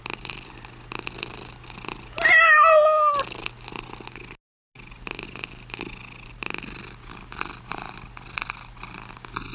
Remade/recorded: recorded